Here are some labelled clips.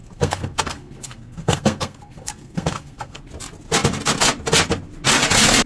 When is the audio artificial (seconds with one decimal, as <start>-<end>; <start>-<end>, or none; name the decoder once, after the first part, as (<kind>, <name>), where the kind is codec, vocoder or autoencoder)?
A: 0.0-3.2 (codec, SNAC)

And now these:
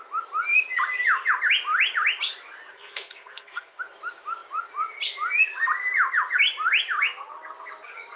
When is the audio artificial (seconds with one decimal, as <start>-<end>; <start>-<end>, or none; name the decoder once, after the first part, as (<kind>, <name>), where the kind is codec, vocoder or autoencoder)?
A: 2.7-3.8 (codec, SNAC)

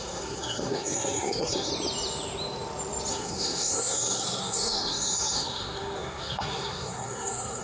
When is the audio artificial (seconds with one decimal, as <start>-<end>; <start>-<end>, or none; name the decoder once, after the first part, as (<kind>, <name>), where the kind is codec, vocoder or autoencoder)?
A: 0.0-1.7 (codec, SNAC); 3.1-7.6

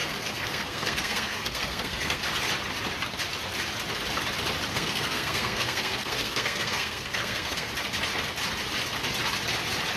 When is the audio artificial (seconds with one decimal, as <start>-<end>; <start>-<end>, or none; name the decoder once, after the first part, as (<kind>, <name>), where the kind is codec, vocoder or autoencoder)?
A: 0.0-2.2 (codec, SNAC); 4.7-7.7

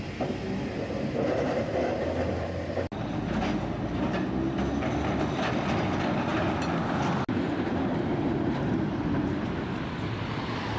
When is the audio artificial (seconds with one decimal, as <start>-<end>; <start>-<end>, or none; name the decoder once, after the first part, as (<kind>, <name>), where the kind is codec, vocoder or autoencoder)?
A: none

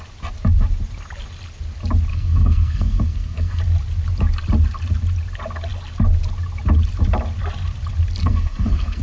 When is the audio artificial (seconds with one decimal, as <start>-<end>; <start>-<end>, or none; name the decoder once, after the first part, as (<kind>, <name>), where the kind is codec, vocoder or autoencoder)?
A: 2.1-3.6 (codec, SNAC); 8.2-9.0